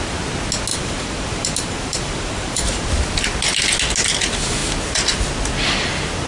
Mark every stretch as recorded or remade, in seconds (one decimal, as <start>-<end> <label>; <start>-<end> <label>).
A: 0.0-0.7 recorded; 0.7-2.9 remade; 2.9-6.3 recorded